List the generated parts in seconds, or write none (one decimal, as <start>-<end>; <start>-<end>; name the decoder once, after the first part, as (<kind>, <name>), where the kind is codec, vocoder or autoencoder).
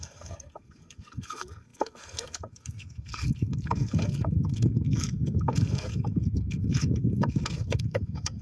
0.0-8.4 (codec, SNAC)